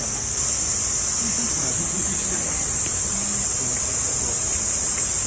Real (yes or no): yes